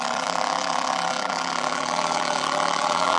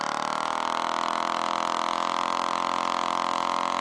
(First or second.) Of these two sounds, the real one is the second